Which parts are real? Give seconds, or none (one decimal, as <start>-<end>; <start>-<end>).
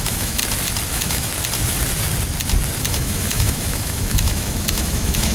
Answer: 0.4-0.9; 1.3-2.8